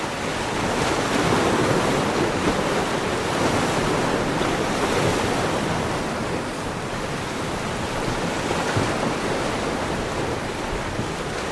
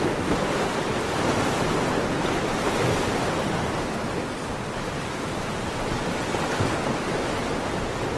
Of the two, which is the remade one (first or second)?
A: first